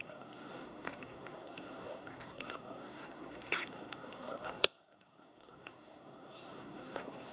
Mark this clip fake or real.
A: fake